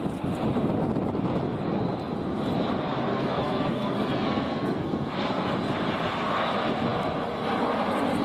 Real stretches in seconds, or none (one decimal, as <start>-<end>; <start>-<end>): 0.0-3.1; 5.1-8.2